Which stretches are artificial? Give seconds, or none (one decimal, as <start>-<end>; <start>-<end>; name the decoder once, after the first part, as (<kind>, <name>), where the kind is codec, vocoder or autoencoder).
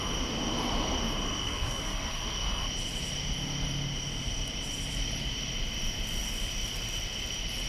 1.4-2.6 (codec, SNAC)